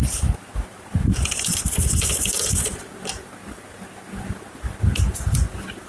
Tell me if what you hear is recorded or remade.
recorded